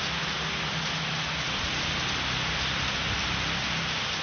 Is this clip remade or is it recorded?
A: recorded